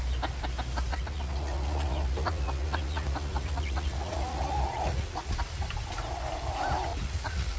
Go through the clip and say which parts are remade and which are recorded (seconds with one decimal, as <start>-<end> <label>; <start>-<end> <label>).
0.0-0.9 recorded; 0.9-5.3 remade; 5.3-6.9 recorded; 6.9-7.6 remade